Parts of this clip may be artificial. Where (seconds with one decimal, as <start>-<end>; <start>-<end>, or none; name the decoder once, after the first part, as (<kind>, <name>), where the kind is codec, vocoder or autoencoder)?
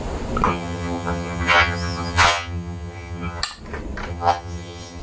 0.5-3.4 (vocoder, HiFi-GAN); 4.1-5.0